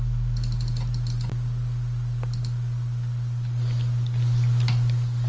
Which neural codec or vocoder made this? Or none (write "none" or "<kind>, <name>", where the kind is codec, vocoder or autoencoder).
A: none